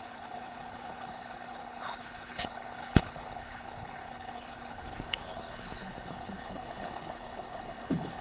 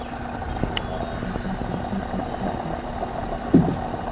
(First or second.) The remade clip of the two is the first